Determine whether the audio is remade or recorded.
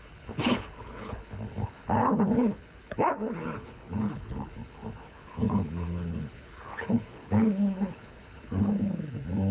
remade